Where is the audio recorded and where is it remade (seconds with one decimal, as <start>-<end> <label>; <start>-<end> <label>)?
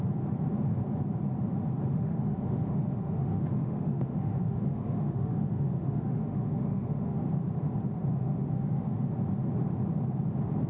0.0-1.9 recorded; 1.9-7.2 remade; 7.2-8.1 recorded; 8.1-9.1 remade; 9.1-10.7 recorded